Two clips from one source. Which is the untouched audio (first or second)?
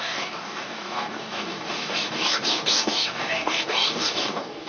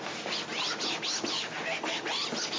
second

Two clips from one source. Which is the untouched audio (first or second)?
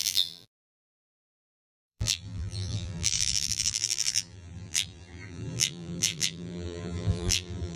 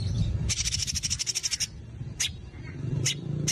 second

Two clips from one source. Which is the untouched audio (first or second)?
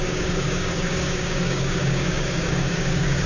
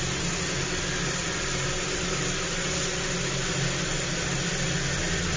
second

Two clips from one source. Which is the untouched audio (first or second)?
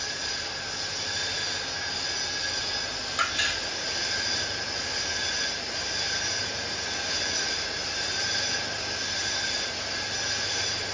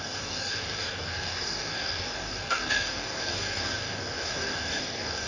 first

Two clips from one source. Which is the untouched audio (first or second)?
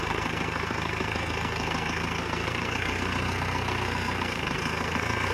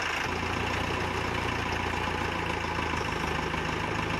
second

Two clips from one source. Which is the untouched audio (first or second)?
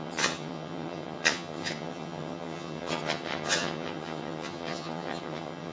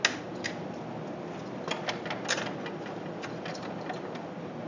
second